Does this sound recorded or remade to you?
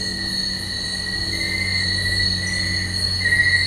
recorded